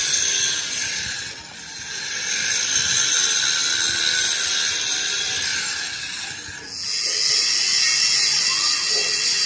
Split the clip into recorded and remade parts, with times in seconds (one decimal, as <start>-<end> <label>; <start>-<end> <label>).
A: 0.0-9.5 recorded